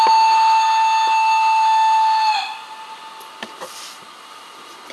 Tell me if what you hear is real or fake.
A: real